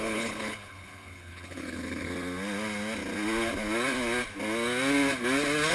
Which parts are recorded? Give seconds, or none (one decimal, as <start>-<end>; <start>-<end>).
2.1-5.7

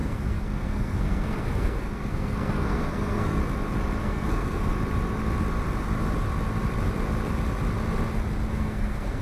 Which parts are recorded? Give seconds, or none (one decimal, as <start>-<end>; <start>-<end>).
3.4-4.0; 4.7-8.5

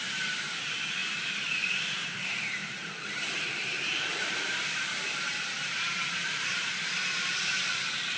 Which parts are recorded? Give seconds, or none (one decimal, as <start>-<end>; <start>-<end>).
0.0-1.0; 2.2-2.6; 6.8-8.2

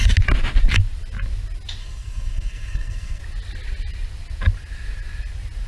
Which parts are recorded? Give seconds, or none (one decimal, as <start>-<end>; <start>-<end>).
0.0-1.8; 3.2-5.7

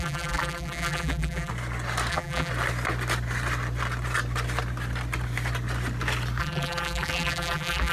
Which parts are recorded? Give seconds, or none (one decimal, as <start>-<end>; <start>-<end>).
1.5-2.1; 2.5-6.4

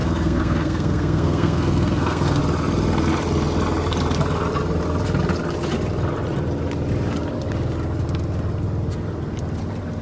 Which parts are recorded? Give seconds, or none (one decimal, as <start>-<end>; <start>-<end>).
2.4-10.0

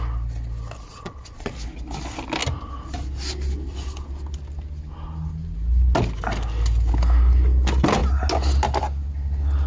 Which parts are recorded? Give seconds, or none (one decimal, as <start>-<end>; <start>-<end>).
0.0-0.9; 1.5-9.7

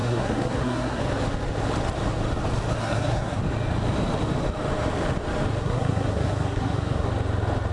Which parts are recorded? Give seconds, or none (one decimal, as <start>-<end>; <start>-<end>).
1.0-2.8; 3.4-5.6; 7.1-7.7